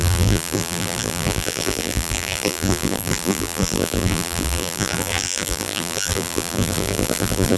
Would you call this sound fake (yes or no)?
yes